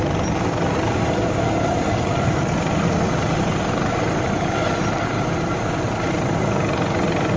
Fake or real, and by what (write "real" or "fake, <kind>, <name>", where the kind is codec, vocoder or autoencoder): real